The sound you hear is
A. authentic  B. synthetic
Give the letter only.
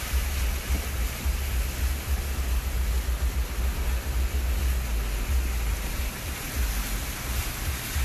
A